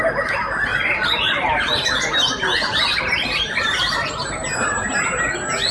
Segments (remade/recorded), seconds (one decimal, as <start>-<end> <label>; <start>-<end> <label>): 0.0-0.7 recorded; 0.7-4.1 remade; 4.1-5.7 recorded